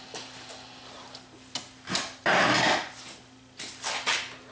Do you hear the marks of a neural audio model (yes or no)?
no